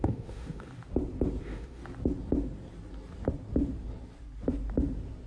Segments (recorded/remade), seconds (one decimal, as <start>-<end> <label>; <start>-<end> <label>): 0.0-0.7 remade; 0.7-1.4 recorded; 1.4-1.8 remade; 1.8-5.3 recorded